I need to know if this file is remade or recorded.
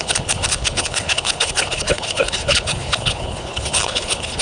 remade